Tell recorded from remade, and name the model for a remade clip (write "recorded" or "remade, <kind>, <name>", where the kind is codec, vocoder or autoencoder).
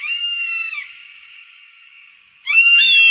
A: remade, codec, DAC